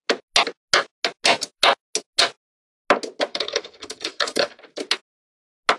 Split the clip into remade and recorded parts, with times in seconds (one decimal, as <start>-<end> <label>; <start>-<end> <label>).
0.0-3.3 recorded; 3.3-4.6 remade; 4.6-5.8 recorded